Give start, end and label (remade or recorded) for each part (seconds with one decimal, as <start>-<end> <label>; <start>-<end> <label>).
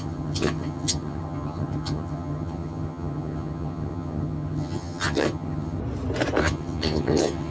0.0-5.8 remade; 5.8-6.4 recorded; 6.4-7.5 remade